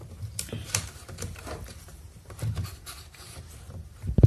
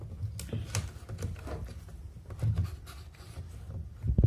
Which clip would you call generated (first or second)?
first